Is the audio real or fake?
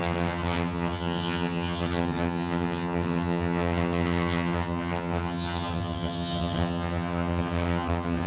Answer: fake